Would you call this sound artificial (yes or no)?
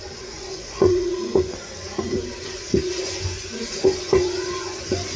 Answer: yes